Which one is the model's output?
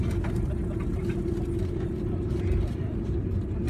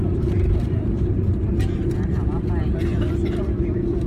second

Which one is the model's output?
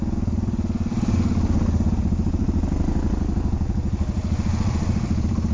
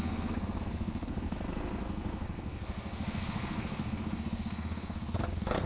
second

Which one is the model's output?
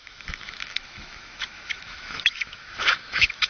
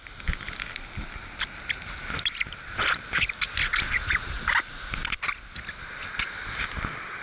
first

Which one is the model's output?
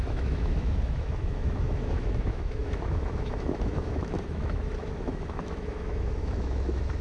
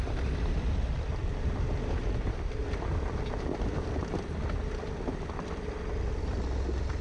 first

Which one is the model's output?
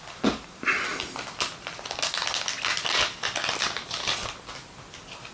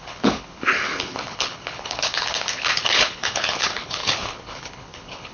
second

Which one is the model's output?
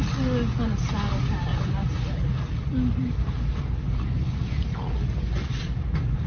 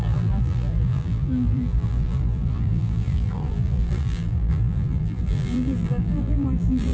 second